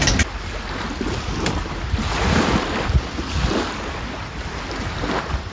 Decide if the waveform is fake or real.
real